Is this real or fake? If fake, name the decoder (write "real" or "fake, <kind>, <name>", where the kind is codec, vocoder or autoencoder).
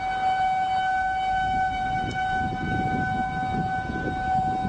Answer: real